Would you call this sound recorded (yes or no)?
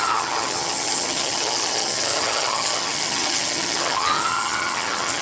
no